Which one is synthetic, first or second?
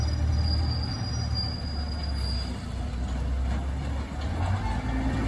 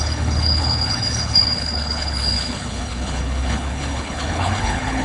second